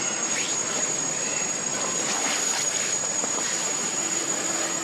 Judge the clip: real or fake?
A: fake